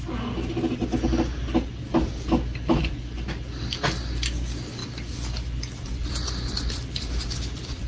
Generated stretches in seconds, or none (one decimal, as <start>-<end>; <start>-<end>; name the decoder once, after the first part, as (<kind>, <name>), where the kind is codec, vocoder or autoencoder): none